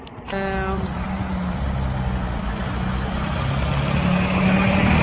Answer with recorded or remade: recorded